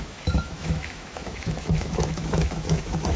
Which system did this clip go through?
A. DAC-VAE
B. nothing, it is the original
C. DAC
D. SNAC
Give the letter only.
A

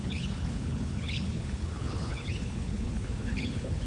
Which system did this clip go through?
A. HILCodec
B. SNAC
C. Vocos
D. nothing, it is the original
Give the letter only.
A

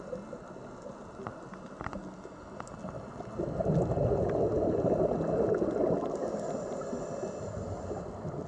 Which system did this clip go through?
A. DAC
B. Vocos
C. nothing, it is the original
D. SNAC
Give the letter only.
C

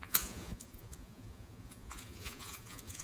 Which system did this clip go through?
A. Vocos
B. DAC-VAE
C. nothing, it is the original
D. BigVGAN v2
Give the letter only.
A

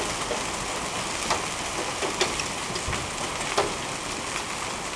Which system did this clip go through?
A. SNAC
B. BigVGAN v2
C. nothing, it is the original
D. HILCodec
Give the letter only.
C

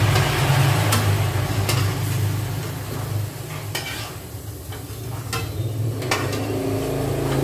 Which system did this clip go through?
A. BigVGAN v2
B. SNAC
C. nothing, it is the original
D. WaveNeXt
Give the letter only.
C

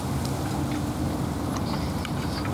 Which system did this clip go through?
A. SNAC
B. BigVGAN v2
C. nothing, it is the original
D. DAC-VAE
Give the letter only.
C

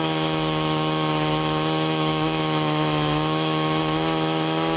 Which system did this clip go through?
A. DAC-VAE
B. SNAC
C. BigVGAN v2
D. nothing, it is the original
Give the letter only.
A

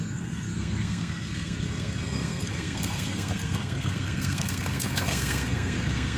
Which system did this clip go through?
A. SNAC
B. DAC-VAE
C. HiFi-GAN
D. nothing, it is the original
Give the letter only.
A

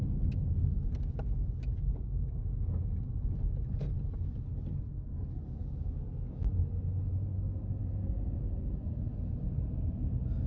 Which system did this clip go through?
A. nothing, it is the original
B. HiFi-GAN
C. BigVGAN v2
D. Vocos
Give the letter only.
A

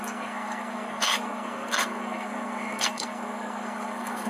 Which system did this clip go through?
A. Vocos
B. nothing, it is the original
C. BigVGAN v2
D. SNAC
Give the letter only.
D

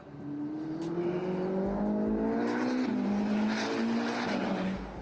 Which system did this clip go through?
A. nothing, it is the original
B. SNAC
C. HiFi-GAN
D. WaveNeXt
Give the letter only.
A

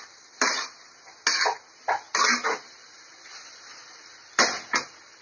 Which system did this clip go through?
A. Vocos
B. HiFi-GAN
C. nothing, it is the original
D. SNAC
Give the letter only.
C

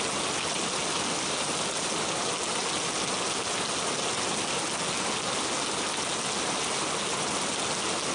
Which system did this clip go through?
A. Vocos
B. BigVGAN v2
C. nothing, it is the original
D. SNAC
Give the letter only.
C